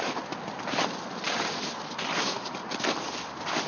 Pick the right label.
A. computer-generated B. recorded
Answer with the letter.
B